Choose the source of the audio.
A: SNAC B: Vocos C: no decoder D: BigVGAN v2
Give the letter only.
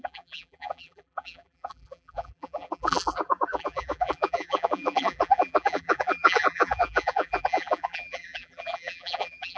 D